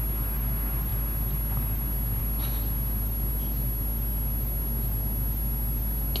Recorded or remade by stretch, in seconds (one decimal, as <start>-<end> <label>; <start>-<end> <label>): 0.0-6.2 recorded